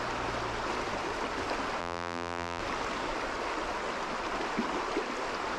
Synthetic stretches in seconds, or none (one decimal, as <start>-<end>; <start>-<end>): 1.8-2.6